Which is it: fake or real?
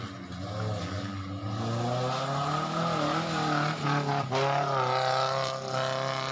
real